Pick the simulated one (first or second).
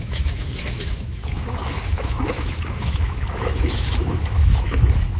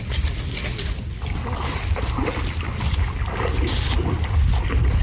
first